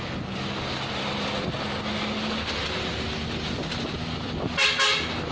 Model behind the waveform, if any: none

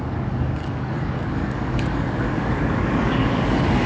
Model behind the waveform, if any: codec, DAC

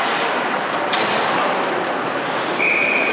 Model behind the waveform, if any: none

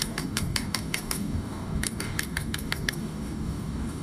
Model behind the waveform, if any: codec, DAC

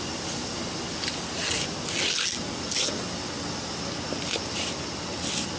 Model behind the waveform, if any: none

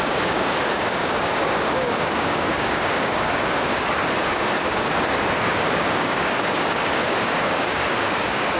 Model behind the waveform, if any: codec, DAC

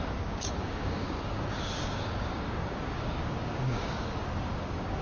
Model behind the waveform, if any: codec, DAC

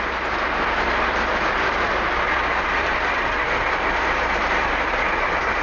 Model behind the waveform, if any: none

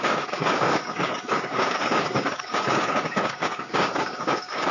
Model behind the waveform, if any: codec, DAC